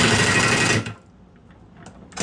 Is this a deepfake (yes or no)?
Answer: no